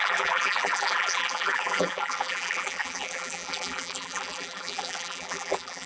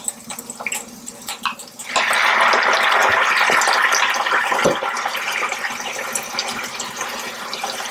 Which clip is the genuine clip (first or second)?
second